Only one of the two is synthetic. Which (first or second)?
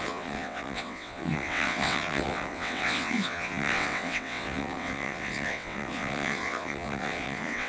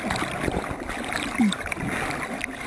first